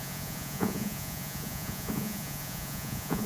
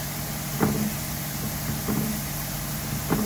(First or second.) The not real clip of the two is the first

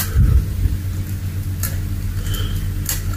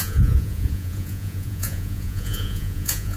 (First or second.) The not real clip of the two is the second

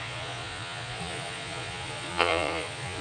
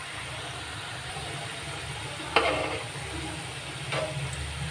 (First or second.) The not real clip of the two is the first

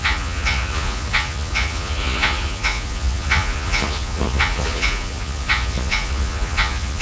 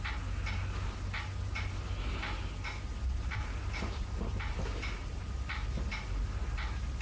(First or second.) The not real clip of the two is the first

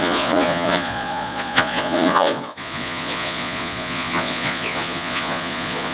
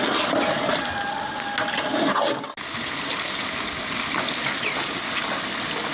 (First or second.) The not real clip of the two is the first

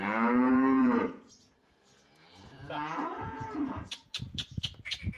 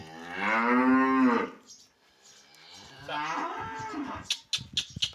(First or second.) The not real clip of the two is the first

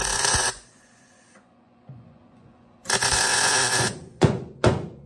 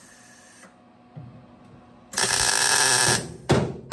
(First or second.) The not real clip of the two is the first